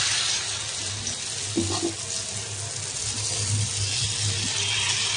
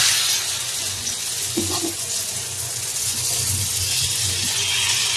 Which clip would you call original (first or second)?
first